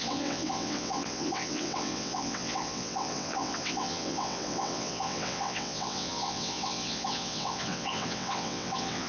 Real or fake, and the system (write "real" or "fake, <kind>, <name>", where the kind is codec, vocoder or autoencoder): fake, vocoder, WaveNeXt